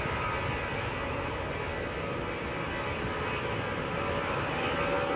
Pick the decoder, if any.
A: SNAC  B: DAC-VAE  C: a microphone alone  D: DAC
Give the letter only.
C